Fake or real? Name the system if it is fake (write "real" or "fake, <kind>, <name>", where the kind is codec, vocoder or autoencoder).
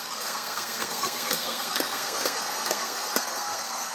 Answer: fake, codec, SNAC